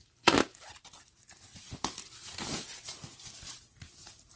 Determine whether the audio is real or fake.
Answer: fake